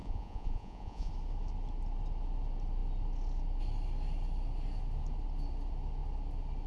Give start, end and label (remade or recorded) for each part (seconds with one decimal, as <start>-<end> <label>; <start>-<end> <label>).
0.0-1.1 remade; 1.1-6.7 recorded